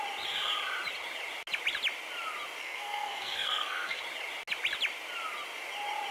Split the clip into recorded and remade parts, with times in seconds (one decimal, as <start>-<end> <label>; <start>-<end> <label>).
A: 0.0-2.6 recorded; 2.6-4.0 remade; 4.0-6.1 recorded